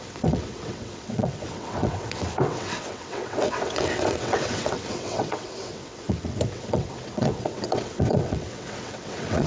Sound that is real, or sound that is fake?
fake